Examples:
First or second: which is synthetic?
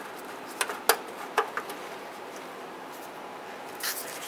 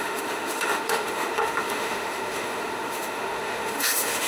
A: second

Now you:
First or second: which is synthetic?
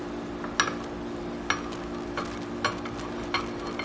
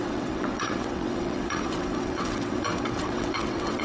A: second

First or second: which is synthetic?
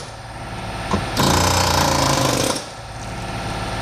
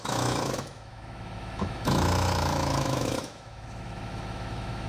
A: second